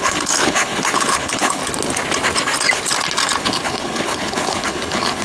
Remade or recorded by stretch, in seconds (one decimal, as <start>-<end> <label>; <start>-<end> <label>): 0.0-1.6 remade; 1.6-3.4 recorded; 3.4-5.2 remade